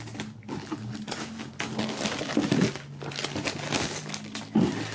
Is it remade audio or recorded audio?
recorded